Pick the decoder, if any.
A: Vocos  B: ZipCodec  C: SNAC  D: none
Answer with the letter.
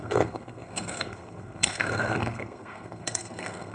C